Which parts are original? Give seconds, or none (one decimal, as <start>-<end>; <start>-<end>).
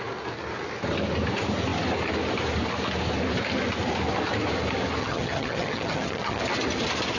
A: 0.0-5.0; 6.4-7.2